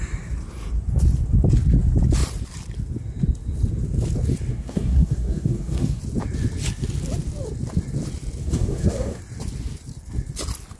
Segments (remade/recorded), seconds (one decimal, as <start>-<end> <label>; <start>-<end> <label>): 0.0-4.5 recorded; 4.5-6.0 remade; 6.0-8.4 recorded; 8.4-9.2 remade; 9.2-10.8 recorded